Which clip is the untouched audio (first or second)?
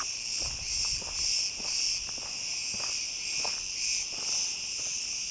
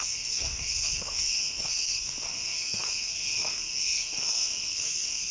first